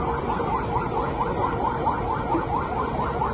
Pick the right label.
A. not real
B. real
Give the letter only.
B